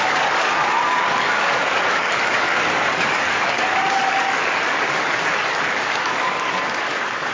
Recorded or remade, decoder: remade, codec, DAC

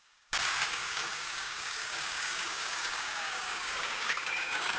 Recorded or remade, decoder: remade, codec, DAC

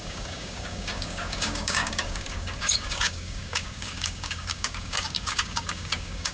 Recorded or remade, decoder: remade, codec, DAC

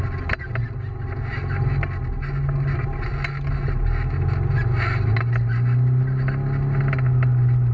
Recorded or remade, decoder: recorded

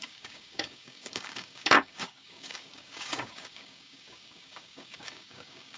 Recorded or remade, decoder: remade, codec, DAC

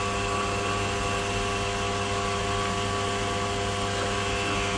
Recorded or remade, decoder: recorded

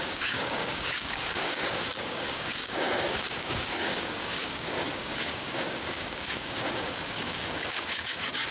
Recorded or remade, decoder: remade, codec, DAC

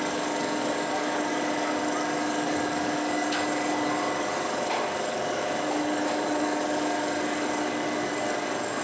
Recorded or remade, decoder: remade, codec, DAC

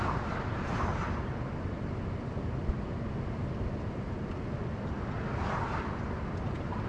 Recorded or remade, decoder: recorded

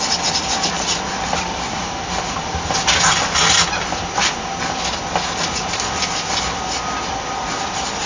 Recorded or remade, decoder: recorded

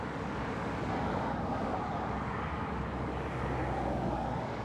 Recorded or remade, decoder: remade, codec, DAC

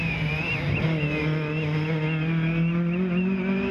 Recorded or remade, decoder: recorded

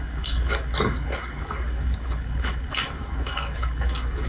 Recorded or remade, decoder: remade, codec, DAC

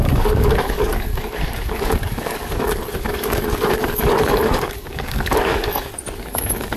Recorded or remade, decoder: remade, codec, DAC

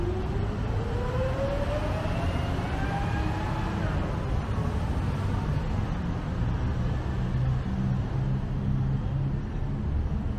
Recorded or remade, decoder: recorded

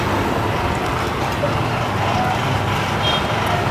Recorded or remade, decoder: recorded